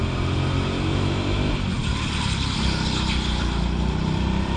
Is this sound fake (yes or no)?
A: no